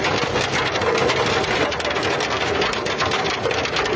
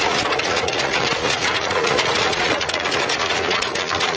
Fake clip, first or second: second